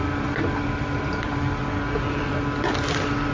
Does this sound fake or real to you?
fake